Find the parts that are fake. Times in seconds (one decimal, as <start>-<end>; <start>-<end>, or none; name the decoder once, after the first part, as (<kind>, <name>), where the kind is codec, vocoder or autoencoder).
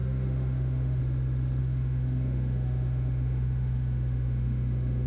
0.0-1.0 (autoencoder, DAC-VAE); 1.6-5.1